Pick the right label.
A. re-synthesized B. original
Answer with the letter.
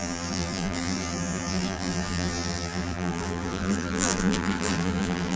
A